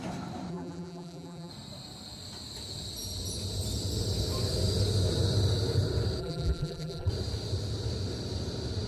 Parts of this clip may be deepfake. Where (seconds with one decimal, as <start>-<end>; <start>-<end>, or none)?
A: 0.5-1.5; 6.2-7.1